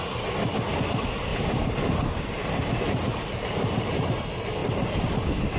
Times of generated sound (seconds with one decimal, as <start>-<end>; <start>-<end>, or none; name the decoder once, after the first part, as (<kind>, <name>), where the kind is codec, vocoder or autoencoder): 1.3-4.1 (vocoder, BigVGAN v2)